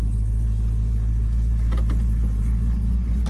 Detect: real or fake real